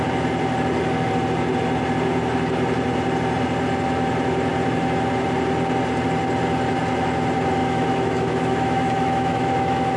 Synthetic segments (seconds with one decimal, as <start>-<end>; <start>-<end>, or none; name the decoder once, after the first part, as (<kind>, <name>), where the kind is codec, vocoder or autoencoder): 7.6-10.0 (autoencoder, DAC-VAE)